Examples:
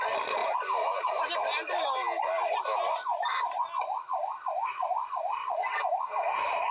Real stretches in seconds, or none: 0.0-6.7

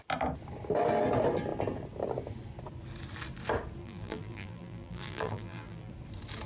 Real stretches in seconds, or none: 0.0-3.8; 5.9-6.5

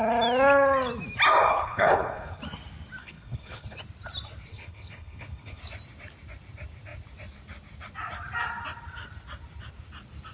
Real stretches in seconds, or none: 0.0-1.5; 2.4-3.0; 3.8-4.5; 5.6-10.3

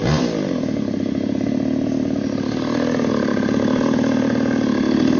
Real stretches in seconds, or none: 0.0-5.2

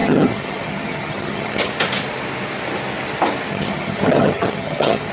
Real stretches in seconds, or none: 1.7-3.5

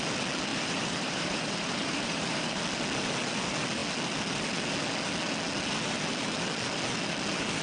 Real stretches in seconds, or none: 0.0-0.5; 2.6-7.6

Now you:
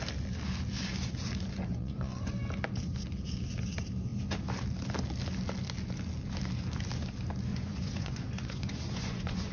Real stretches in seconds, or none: 0.0-1.7; 2.3-7.5